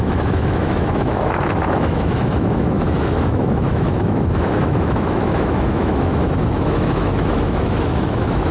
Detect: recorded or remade remade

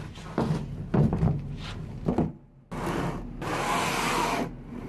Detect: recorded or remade recorded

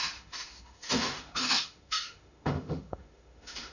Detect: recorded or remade remade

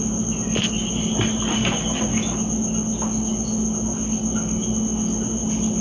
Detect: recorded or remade recorded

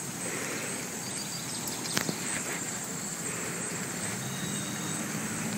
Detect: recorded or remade recorded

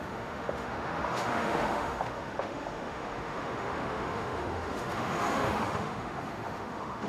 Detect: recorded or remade remade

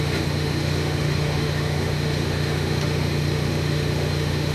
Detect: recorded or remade remade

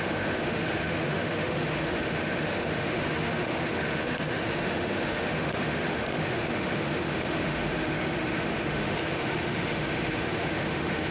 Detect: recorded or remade remade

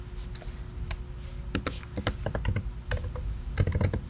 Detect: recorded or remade recorded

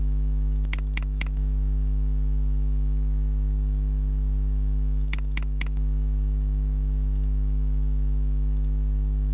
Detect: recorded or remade remade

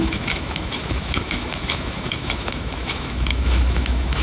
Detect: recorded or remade remade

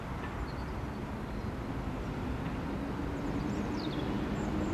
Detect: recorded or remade recorded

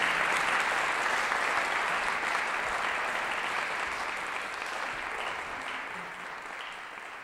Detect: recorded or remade recorded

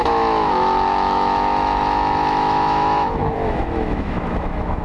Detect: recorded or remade remade